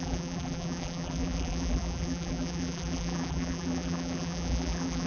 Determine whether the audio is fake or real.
fake